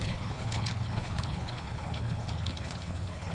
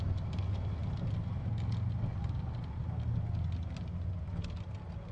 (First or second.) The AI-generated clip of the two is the first